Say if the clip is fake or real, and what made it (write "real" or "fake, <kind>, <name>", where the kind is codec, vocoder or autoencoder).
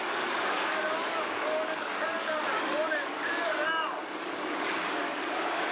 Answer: fake, codec, DAC